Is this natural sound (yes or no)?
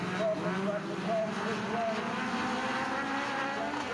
yes